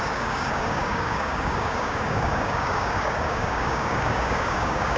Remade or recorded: remade